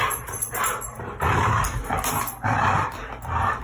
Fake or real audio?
real